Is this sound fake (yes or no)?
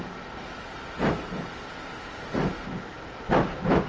no